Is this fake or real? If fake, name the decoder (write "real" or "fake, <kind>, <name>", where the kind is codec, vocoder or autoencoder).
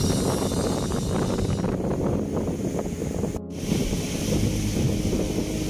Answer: real